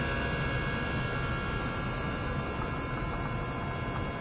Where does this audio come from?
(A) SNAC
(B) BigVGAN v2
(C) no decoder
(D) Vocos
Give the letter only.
C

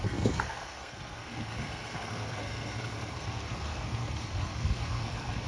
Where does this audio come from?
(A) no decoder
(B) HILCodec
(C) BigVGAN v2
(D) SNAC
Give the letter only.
D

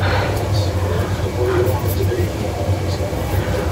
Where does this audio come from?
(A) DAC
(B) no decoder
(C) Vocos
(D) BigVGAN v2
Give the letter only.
D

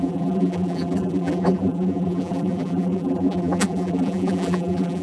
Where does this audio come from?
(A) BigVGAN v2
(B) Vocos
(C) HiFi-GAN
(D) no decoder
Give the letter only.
A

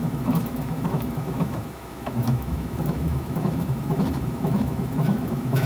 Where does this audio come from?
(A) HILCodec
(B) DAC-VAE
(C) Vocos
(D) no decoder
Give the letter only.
B